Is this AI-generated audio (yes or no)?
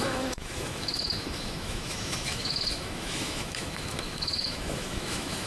yes